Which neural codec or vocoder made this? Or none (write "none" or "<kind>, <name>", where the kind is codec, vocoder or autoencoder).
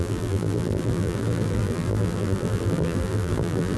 vocoder, BigVGAN v2